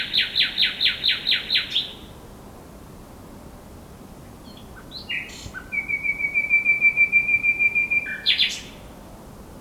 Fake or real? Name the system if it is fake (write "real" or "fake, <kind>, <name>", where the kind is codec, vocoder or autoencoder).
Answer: real